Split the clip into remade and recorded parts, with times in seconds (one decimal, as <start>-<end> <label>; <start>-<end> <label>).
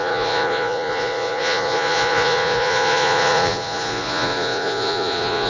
0.0-5.5 remade